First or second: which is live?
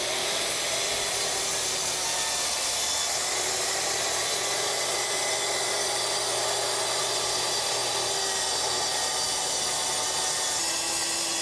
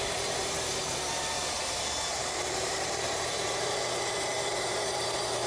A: first